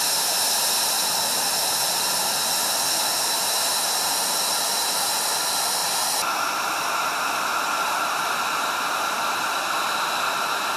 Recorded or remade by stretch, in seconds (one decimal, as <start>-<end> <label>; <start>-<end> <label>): 0.0-10.8 recorded